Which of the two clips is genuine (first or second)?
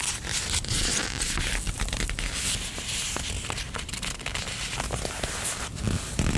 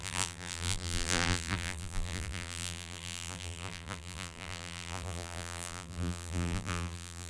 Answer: first